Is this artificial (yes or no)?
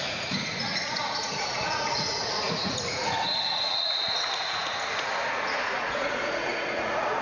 yes